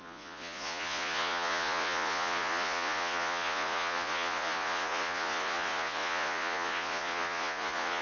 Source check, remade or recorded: remade